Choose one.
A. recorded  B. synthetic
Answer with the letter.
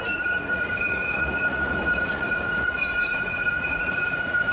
B